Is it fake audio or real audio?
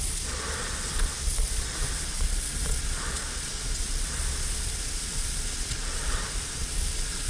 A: fake